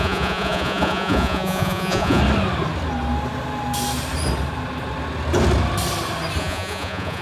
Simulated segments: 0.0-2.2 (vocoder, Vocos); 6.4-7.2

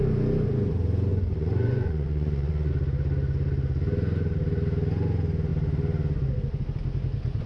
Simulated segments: 1.1-2.7 (vocoder, Vocos)